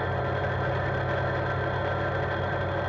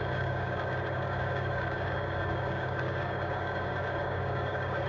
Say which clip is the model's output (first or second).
second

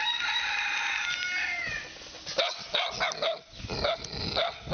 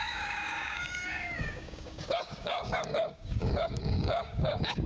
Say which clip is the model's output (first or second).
second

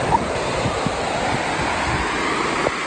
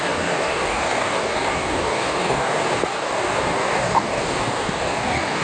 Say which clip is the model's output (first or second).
second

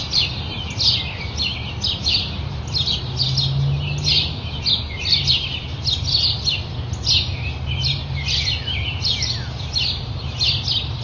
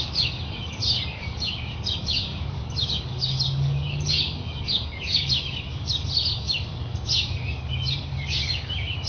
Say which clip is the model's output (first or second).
second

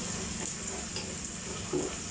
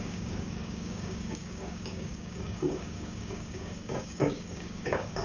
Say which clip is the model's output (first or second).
second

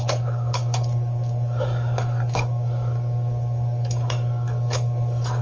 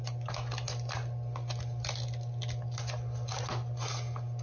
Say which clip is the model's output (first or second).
first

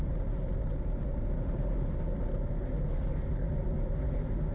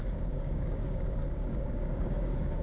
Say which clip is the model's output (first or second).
second